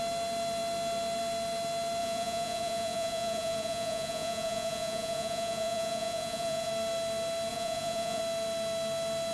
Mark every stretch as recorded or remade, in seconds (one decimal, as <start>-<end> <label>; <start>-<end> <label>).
0.0-2.0 recorded; 2.0-6.7 remade; 6.7-7.5 recorded; 7.5-8.2 remade; 8.2-9.3 recorded